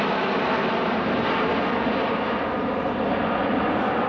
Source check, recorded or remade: recorded